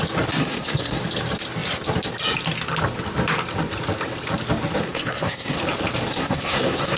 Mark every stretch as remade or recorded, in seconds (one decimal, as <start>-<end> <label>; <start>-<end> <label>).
0.0-0.4 recorded; 0.4-1.0 remade; 1.0-4.8 recorded; 4.8-5.6 remade; 5.6-6.1 recorded; 6.1-7.0 remade